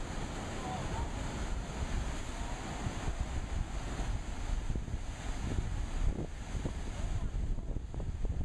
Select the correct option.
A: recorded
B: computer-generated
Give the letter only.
A